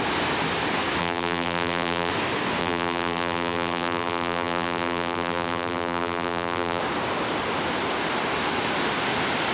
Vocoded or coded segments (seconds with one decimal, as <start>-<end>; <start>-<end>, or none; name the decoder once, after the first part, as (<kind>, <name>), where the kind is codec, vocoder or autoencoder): 1.0-2.1 (vocoder, BigVGAN v2); 2.6-6.8

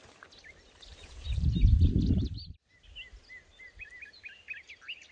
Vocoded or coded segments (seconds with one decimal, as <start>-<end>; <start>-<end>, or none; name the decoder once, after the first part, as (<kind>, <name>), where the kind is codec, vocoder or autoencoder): 0.9-1.5 (vocoder, BigVGAN v2)

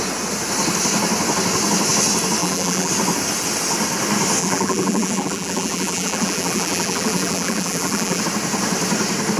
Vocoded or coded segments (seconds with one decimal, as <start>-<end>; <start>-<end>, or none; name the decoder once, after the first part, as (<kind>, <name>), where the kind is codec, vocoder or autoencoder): 2.4-2.9 (vocoder, BigVGAN v2); 4.4-8.2

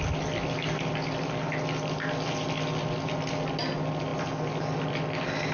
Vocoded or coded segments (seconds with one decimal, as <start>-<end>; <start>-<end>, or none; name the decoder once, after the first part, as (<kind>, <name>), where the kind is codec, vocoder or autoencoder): none

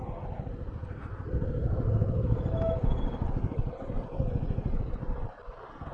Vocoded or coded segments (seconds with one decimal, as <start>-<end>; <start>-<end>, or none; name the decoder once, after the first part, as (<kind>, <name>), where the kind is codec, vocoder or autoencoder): 1.6-2.4 (autoencoder, DAC-VAE)

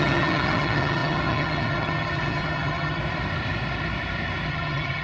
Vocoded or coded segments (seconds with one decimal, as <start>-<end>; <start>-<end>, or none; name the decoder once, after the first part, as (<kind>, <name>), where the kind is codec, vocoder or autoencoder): 0.0-3.0 (vocoder, HiFi-GAN); 4.5-5.0